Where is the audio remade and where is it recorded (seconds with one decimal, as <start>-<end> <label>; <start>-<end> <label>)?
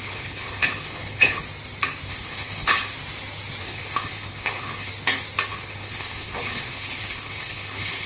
0.0-1.4 remade; 1.4-2.1 recorded; 2.1-2.8 remade; 2.8-3.6 recorded; 3.6-4.9 remade; 4.9-5.5 recorded; 5.5-8.1 remade